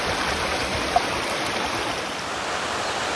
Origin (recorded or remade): recorded